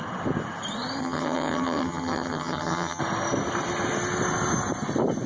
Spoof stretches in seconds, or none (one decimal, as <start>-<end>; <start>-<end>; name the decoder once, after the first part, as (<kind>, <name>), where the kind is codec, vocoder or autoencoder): 1.0-3.0 (vocoder, HiFi-GAN)